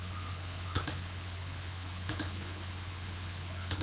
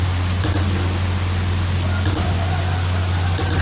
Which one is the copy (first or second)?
first